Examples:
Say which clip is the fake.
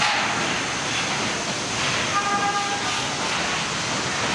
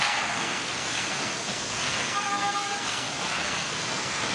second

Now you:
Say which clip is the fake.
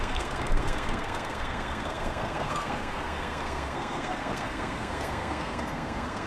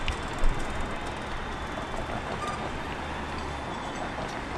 first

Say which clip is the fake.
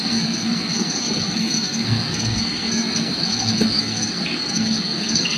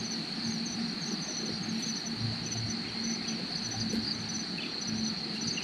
first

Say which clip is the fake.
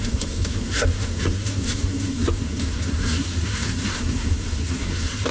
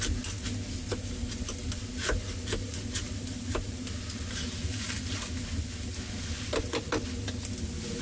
first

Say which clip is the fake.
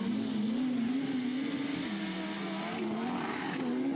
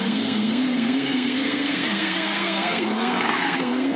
second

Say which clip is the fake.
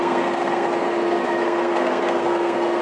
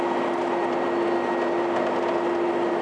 first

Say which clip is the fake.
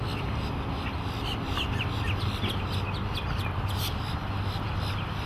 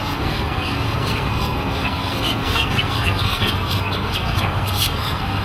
second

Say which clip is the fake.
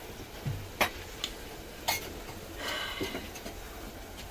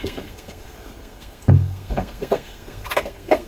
second